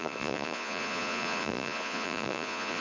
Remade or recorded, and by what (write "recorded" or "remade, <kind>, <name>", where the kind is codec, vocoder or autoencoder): remade, vocoder, Vocos